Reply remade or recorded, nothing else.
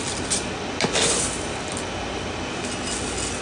recorded